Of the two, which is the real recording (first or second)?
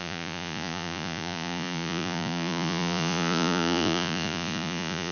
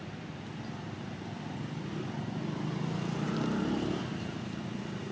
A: second